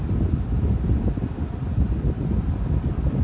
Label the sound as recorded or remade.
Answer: recorded